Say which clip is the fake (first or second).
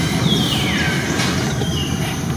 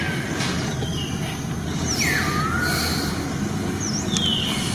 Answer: first